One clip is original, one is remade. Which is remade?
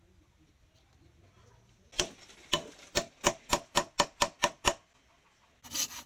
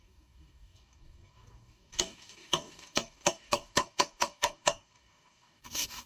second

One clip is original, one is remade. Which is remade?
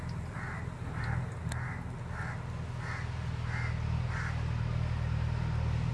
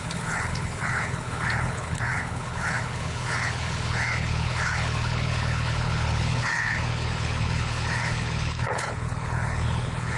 second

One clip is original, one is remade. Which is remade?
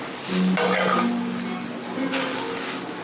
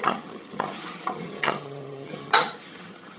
second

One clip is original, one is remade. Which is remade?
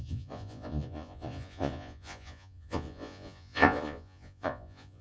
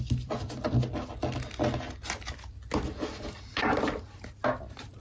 first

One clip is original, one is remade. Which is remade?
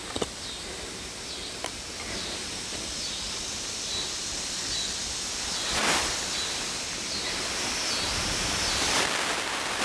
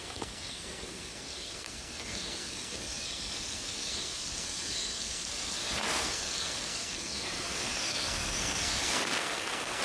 second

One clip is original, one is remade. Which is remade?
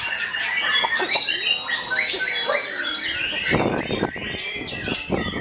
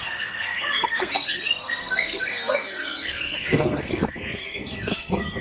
second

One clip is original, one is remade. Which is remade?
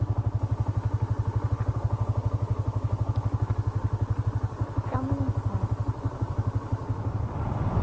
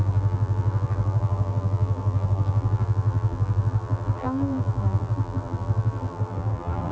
second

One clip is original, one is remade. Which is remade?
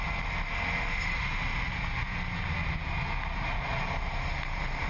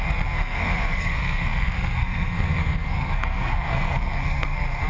second